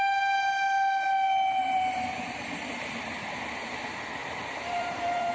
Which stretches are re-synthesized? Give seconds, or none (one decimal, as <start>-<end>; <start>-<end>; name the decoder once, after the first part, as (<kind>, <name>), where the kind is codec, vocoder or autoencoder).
1.6-3.7 (vocoder, BigVGAN v2); 4.2-5.3